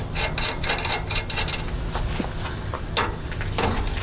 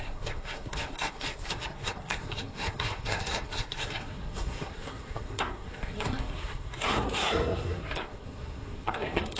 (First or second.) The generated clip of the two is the second